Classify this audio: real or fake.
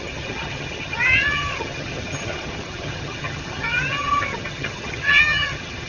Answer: fake